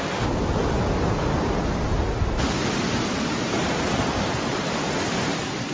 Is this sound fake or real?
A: real